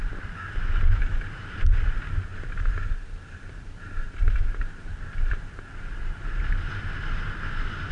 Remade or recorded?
recorded